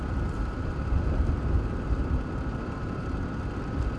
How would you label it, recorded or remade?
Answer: recorded